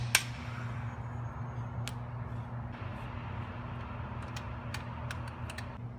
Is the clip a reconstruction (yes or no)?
no